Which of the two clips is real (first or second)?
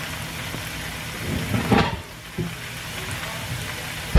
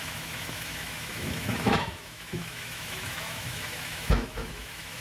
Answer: first